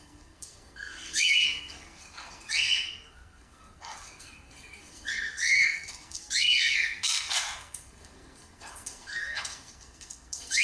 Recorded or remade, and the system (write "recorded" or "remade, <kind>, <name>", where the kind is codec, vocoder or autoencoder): remade, codec, SNAC